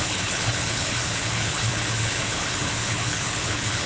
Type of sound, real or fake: fake